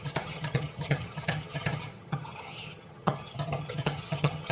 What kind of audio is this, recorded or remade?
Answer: remade